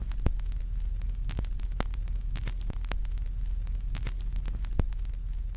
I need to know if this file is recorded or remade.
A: recorded